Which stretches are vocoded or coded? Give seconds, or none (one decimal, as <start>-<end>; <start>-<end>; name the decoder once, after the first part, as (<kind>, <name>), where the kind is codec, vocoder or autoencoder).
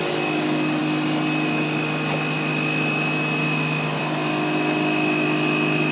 none